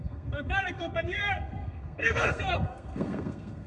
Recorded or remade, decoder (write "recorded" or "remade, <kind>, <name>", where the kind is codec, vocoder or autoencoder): remade, codec, SNAC